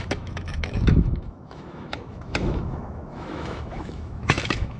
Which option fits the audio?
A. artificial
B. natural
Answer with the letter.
A